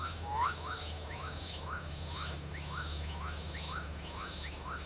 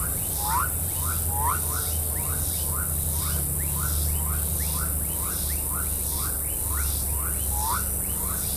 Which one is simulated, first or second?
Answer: first